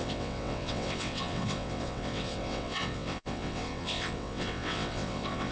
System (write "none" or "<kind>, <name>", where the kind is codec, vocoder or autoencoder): vocoder, WaveNeXt